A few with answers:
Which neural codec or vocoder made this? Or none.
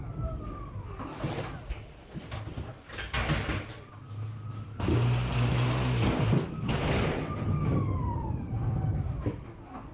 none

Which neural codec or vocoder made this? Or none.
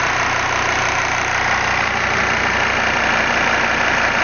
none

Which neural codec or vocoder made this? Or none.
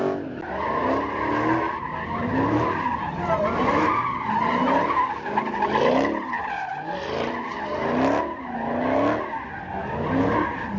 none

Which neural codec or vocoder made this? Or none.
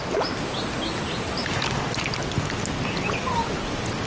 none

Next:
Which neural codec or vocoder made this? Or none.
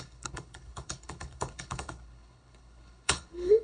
codec, HILCodec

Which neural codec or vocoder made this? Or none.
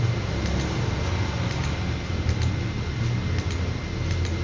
vocoder, BigVGAN v2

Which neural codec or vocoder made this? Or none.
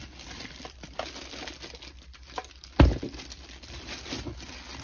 none